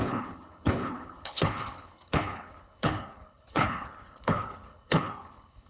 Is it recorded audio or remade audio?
remade